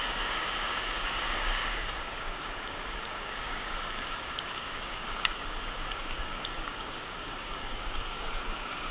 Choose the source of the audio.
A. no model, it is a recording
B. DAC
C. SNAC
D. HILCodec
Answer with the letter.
B